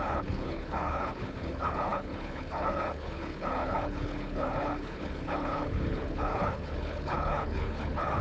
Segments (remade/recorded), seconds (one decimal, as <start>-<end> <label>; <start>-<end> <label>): 0.0-8.2 remade